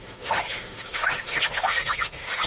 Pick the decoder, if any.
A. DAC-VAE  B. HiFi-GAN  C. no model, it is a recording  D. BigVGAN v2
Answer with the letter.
A